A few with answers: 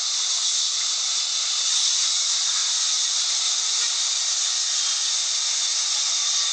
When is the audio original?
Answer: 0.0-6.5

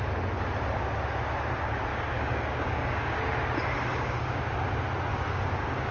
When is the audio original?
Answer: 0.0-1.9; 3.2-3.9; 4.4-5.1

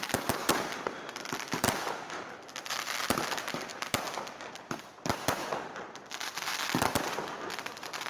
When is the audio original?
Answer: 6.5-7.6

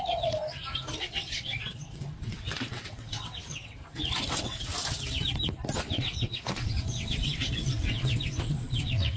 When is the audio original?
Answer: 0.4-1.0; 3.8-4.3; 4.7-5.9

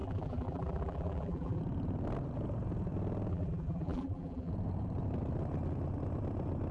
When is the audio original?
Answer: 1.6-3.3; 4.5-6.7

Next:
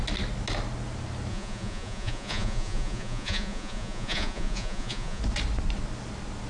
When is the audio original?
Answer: 0.0-1.3; 5.2-6.5